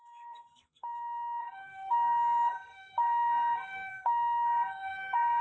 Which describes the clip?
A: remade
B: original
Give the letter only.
A